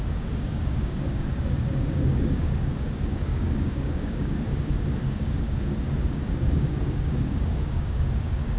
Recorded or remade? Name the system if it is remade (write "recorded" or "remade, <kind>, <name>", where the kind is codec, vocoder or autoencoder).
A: remade, codec, DAC